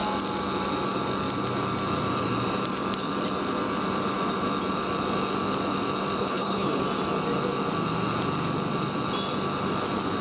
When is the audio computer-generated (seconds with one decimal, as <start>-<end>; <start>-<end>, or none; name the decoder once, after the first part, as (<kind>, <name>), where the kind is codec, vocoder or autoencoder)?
6.2-6.8 (codec, HILCodec)